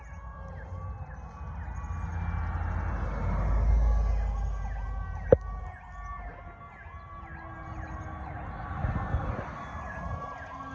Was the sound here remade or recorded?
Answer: recorded